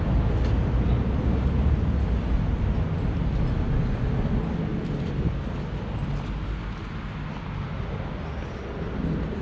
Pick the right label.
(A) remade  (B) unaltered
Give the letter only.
B